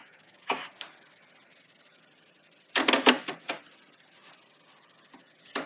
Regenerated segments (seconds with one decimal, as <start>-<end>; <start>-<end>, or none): 0.0-0.7